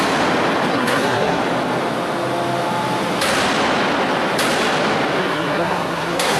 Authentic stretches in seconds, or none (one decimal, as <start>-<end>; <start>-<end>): 0.0-0.7; 1.4-5.2